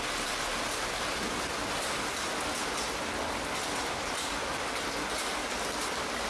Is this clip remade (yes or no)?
no